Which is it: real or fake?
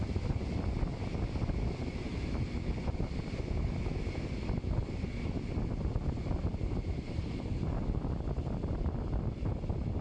real